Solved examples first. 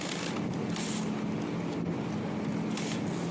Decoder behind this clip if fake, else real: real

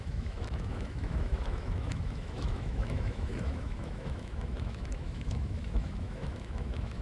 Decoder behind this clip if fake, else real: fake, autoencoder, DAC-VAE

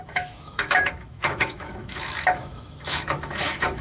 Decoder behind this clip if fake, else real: fake, autoencoder, DAC-VAE